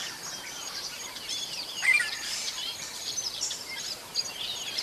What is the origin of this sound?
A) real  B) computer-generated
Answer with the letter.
B